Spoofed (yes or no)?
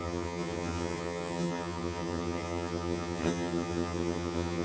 yes